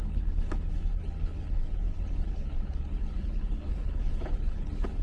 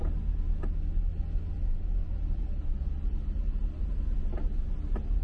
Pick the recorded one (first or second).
second